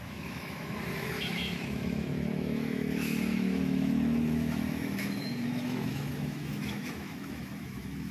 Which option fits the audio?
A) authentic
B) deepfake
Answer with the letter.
B